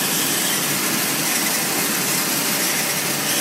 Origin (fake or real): real